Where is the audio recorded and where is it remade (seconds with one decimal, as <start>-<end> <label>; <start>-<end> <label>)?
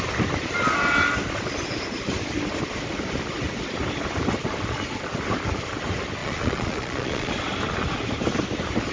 0.0-6.2 recorded; 6.2-7.3 remade; 7.3-8.9 recorded